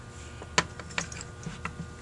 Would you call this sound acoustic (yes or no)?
yes